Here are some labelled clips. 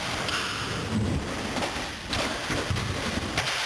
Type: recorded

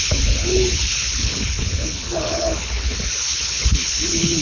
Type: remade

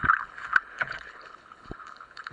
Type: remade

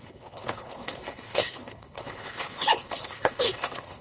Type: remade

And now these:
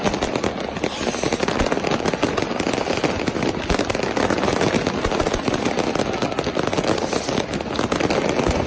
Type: recorded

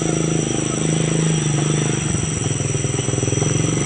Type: recorded